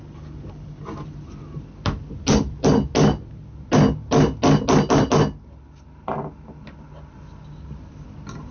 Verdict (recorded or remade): recorded